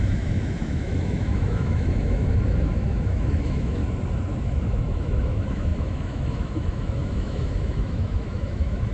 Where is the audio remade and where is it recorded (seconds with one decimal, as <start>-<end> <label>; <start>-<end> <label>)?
0.0-3.8 remade; 3.8-4.4 recorded; 4.4-8.9 remade